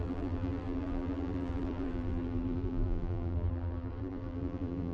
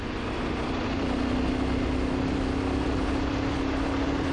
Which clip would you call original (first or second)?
second